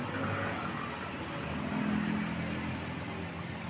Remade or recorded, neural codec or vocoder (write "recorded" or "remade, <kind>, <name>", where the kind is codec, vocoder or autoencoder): recorded